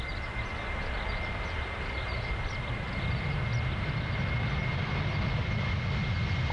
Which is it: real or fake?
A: real